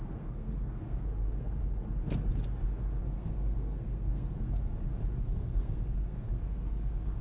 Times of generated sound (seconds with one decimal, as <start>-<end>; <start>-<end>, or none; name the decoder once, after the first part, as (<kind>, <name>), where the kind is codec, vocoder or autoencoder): 0.0-1.6 (codec, SNAC); 3.0-4.7; 5.2-7.2